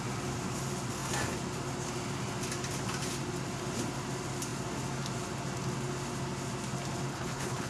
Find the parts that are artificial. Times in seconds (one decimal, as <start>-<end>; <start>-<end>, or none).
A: 7.1-7.7